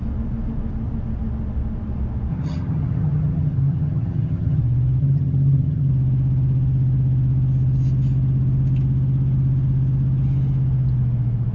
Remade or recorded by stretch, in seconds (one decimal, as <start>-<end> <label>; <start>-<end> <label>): 0.0-2.3 recorded; 2.3-4.6 remade; 4.6-5.0 recorded; 5.0-5.9 remade; 5.9-11.5 recorded